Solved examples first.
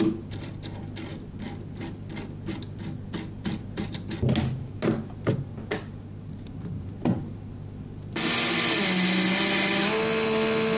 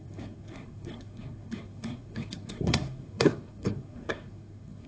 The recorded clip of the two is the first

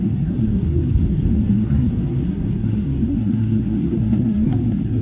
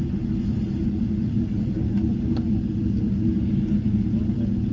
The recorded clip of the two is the second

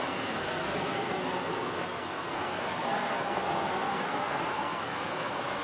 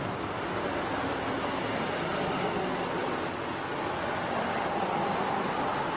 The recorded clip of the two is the second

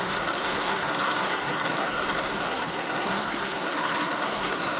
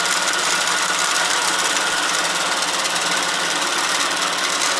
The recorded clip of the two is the second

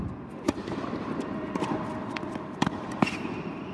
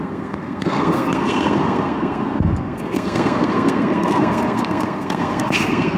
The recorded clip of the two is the first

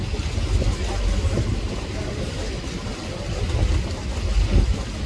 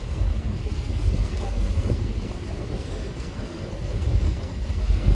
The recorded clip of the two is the first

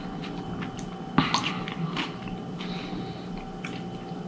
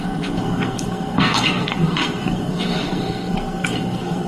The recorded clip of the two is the first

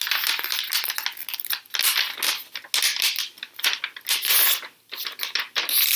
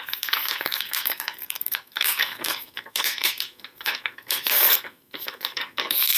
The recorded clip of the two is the first